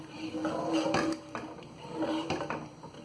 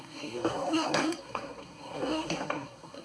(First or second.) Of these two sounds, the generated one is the second